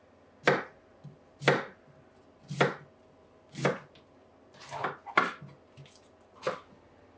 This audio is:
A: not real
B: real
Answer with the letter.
B